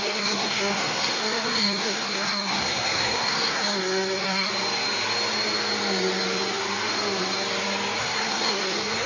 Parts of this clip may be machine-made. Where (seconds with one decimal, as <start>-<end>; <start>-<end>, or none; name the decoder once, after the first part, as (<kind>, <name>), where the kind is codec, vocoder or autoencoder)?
0.0-4.5 (codec, SNAC); 8.0-9.1